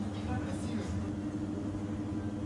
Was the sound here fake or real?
real